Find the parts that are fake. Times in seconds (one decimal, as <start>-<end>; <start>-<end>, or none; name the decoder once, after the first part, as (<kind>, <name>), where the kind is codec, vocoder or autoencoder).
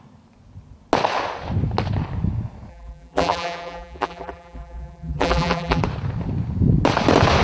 2.7-5.8 (vocoder, BigVGAN v2)